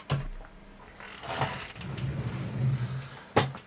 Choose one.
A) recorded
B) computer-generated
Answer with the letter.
A